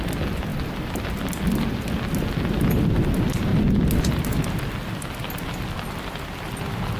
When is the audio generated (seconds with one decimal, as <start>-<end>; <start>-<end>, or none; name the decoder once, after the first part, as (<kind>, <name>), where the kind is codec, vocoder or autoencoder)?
none